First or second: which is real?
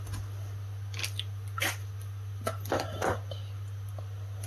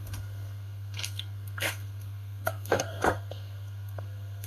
first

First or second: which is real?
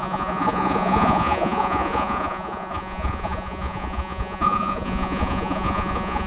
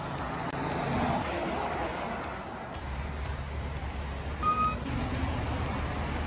second